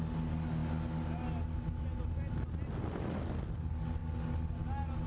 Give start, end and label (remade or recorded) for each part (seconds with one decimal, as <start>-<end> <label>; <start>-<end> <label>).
0.0-5.1 recorded